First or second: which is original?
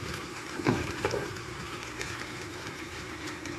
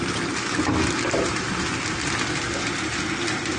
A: second